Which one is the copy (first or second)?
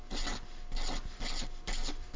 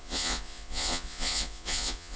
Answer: second